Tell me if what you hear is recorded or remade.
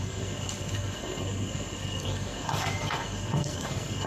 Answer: remade